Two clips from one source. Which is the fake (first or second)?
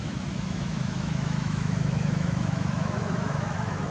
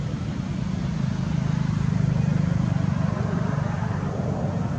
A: first